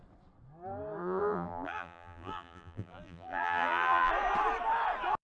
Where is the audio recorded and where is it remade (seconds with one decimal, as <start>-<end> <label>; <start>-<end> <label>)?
0.0-1.0 recorded; 1.0-4.1 remade; 4.1-5.2 recorded